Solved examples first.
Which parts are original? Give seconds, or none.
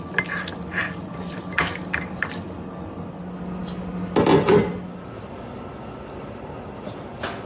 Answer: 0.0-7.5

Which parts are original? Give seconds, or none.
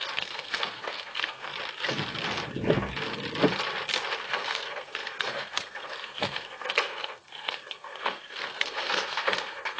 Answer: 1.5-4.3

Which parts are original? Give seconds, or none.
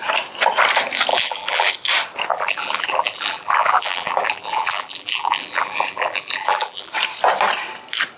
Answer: 0.0-1.1; 1.7-2.3; 6.9-8.2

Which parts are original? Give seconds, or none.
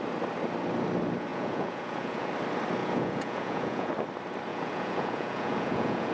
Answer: 0.0-1.3; 2.3-2.8; 3.9-4.5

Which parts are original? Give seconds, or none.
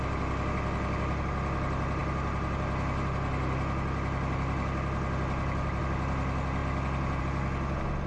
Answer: 0.0-8.1